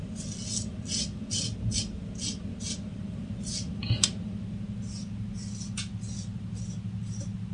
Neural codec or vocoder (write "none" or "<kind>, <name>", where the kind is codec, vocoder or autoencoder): none